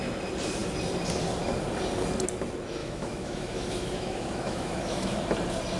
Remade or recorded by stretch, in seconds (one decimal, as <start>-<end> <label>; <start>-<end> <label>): 0.0-2.8 recorded; 2.8-5.2 remade; 5.2-5.8 recorded